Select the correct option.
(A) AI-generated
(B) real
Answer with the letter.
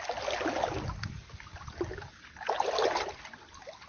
B